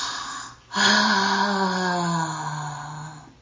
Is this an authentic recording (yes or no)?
yes